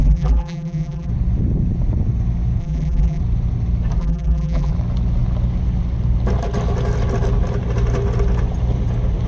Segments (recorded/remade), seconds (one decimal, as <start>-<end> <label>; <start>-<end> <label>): 0.0-1.1 remade; 1.1-2.6 recorded; 2.6-3.2 remade; 3.2-4.0 recorded; 4.0-4.7 remade; 4.7-9.3 recorded